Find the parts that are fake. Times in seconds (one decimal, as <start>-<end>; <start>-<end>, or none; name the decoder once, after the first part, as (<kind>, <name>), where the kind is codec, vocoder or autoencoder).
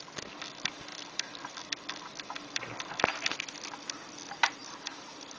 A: 4.6-5.4 (vocoder, BigVGAN v2)